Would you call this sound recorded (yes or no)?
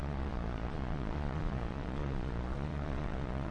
no